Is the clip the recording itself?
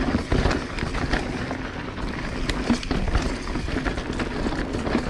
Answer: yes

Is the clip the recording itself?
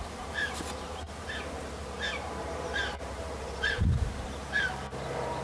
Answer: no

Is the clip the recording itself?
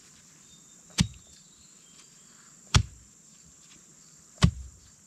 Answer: no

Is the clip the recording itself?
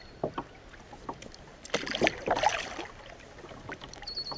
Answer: yes